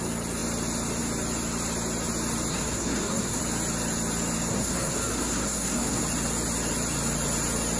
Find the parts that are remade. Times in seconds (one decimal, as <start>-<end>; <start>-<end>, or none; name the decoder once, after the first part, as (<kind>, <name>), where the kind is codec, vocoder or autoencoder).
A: 2.5-3.4 (codec, SNAC); 4.5-6.0